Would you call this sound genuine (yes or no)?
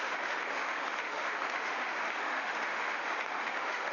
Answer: no